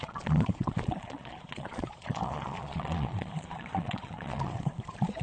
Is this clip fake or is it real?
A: fake